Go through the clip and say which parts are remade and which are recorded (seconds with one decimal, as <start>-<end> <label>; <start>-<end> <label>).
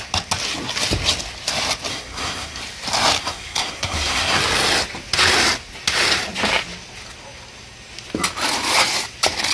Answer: 0.0-1.9 recorded; 1.9-2.6 remade; 2.6-3.2 recorded; 3.2-4.4 remade; 4.4-9.5 recorded